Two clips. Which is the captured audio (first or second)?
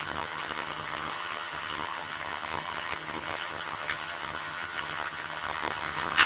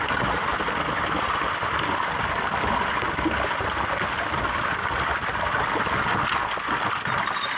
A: second